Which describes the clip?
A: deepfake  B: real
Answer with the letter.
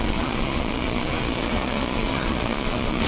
A